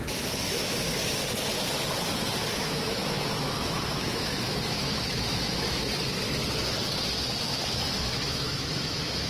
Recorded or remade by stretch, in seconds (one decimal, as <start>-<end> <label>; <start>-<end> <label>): 0.0-1.0 remade; 1.0-2.6 recorded; 2.6-5.9 remade; 5.9-7.4 recorded; 7.4-9.3 remade